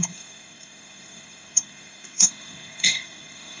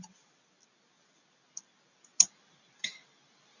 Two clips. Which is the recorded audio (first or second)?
second